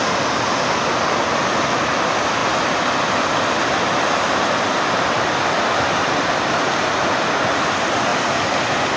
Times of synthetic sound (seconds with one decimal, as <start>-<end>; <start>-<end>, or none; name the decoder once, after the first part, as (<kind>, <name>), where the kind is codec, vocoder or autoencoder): none